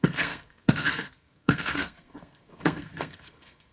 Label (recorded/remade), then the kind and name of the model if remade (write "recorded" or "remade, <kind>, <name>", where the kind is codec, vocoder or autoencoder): remade, codec, SNAC